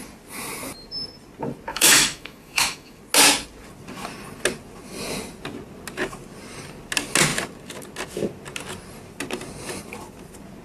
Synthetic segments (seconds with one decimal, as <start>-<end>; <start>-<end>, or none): 1.7-3.0